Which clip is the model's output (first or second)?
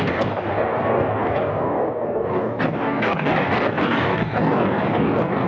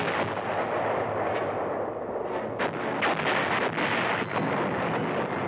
first